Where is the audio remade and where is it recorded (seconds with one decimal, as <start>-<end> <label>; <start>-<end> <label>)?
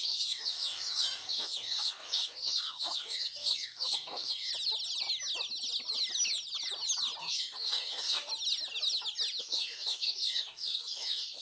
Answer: 0.0-4.5 remade; 4.5-7.2 recorded; 7.2-8.3 remade; 8.3-9.4 recorded; 9.4-11.4 remade